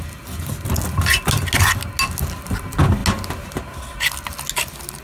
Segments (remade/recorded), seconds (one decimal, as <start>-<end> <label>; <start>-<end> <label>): 0.0-5.0 recorded

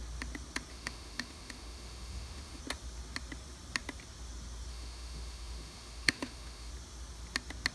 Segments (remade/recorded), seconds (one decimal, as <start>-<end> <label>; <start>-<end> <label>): 0.0-0.7 recorded; 0.7-2.6 remade; 2.6-4.7 recorded; 4.7-6.7 remade; 6.7-7.7 recorded

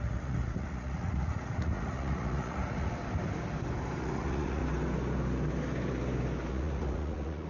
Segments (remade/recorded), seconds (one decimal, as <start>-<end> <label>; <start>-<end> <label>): 0.0-3.0 remade; 3.0-4.0 recorded; 4.0-4.6 remade; 4.6-6.5 recorded; 6.5-7.5 remade

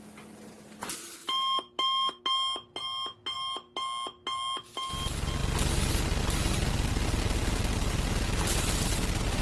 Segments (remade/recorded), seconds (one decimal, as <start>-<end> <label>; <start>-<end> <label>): 0.0-1.2 recorded; 1.2-2.2 remade; 2.2-9.4 recorded

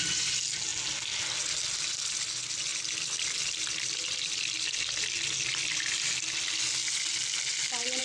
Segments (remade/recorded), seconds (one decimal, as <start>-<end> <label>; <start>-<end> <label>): 0.0-8.0 recorded

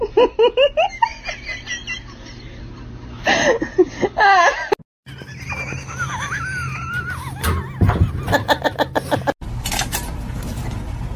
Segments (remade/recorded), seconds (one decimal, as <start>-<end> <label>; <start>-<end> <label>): 0.0-11.2 recorded

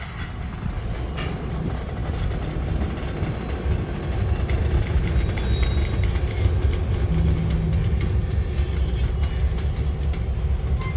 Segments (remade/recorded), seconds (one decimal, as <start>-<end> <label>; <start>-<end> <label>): 0.0-11.0 recorded

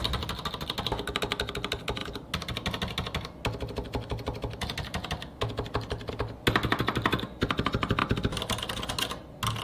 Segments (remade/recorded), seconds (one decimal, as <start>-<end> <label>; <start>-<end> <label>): 0.0-9.6 recorded